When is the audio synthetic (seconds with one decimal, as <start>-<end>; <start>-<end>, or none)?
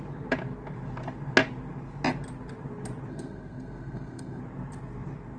3.1-4.4